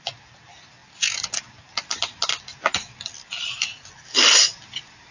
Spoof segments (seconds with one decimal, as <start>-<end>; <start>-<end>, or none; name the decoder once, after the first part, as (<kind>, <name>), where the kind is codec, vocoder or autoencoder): none